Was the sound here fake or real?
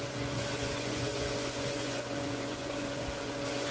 fake